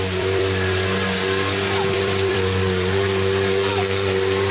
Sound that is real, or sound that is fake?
fake